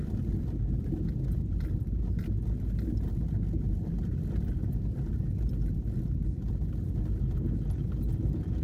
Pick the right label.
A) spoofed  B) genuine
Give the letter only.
B